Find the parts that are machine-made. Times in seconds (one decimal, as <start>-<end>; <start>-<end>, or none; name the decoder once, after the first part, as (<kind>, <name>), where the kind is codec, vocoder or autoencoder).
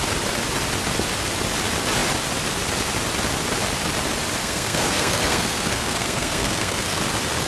4.4-7.0 (codec, SNAC)